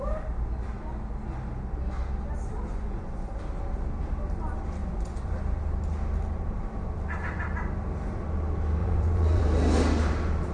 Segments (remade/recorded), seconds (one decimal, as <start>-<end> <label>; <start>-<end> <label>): 0.0-2.7 recorded; 2.7-3.3 remade; 3.3-4.8 recorded; 4.8-5.3 remade; 5.3-8.8 recorded; 8.8-9.4 remade; 9.4-10.5 recorded